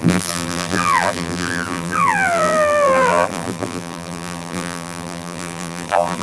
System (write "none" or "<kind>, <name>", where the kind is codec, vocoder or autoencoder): vocoder, BigVGAN v2